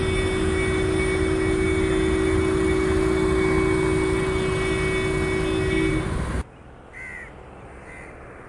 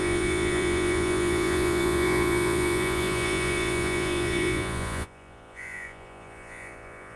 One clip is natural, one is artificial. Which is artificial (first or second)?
second